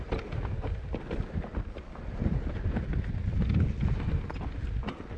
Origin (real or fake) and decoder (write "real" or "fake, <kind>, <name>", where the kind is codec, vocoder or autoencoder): real